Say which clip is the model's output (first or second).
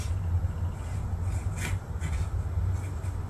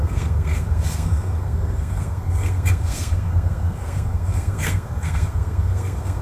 second